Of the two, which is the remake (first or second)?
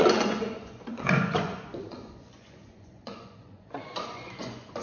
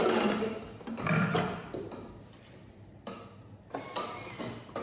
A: first